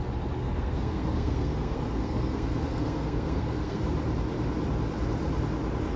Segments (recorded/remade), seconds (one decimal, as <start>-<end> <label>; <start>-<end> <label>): 0.0-0.4 recorded; 0.4-3.8 remade; 3.8-6.0 recorded